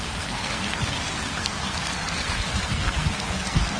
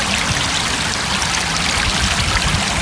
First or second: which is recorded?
second